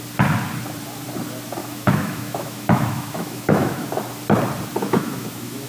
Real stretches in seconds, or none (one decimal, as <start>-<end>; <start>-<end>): 0.0-1.6; 3.9-4.8